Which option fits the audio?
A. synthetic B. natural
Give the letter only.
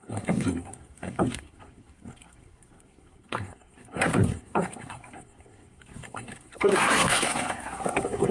A